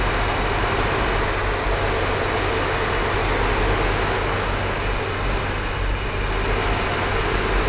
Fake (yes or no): no